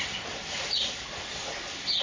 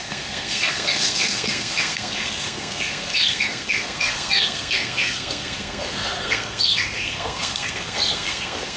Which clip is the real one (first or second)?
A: first